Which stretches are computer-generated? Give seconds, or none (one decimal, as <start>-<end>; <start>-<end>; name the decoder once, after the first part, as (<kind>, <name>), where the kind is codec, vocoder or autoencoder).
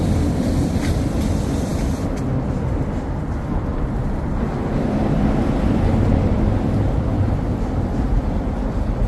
0.0-1.7 (vocoder, BigVGAN v2); 6.9-9.1